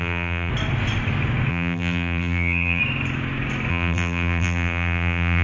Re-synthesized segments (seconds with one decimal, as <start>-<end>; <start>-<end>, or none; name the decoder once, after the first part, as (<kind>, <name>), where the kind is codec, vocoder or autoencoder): 0.0-0.5 (vocoder, BigVGAN v2); 1.5-2.8; 3.7-5.4